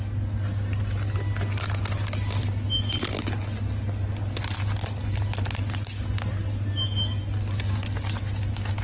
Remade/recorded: recorded